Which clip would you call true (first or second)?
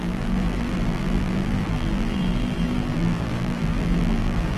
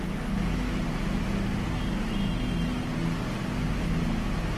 second